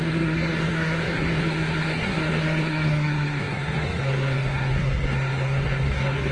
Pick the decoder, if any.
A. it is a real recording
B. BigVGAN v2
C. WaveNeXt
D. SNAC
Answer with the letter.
D